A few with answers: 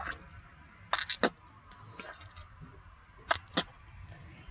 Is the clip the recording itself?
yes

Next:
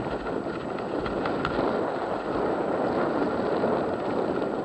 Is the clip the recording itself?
yes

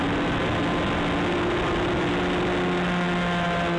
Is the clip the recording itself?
yes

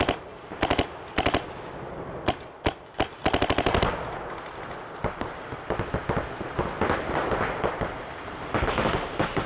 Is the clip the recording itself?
yes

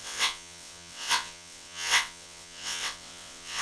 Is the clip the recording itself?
no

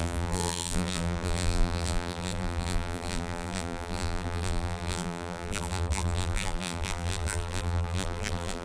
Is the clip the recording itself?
no